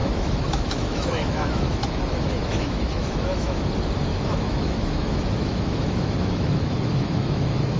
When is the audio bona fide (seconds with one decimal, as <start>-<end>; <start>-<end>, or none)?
3.6-4.1